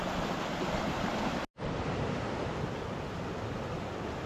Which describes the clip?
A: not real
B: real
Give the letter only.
B